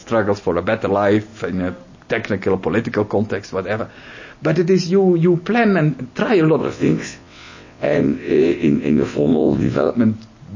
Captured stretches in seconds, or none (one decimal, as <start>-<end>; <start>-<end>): 0.0-6.6; 9.9-10.6